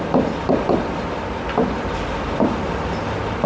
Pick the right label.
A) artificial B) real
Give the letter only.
B